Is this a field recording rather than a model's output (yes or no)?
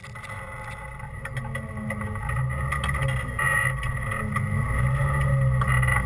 yes